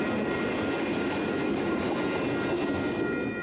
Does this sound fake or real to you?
real